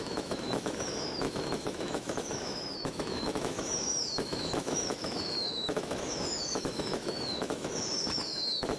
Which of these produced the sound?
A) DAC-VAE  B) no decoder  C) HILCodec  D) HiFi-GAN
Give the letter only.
A